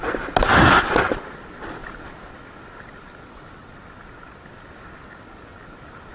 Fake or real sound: real